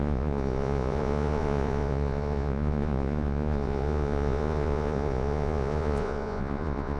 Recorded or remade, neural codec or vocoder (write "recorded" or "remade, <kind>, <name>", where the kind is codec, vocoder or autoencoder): remade, vocoder, Vocos